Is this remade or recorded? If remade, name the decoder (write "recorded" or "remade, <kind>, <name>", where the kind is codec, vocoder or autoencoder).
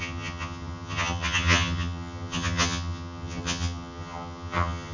remade, vocoder, HiFi-GAN